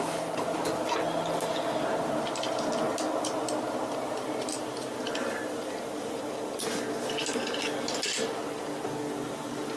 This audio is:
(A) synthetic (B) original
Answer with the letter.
B